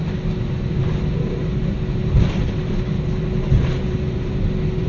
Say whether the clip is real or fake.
real